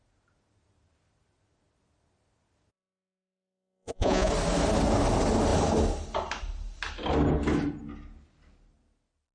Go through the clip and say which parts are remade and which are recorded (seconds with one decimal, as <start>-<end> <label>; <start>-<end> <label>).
0.0-2.7 recorded; 2.7-4.3 remade; 4.3-9.3 recorded